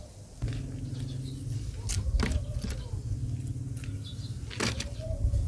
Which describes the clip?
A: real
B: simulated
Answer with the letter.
A